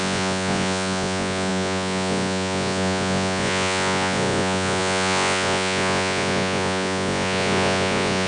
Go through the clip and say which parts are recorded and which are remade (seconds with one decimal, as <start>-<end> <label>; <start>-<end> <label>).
0.0-8.3 remade